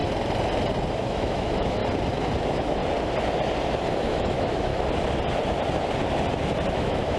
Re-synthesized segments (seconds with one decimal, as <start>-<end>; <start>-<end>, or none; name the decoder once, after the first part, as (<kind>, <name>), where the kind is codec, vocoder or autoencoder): 0.9-1.8 (autoencoder, DAC-VAE); 2.4-2.8; 4.1-4.7; 6.7-7.2